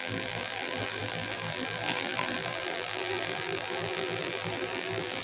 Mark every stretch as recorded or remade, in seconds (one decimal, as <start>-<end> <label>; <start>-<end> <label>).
0.0-5.2 remade